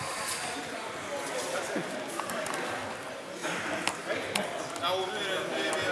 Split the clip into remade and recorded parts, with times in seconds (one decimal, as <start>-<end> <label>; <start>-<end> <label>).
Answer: 0.0-5.9 recorded